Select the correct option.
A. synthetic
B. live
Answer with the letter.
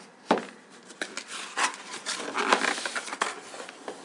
A